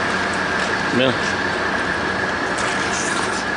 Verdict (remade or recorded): recorded